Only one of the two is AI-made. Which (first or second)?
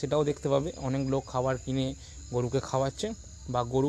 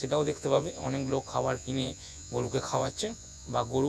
second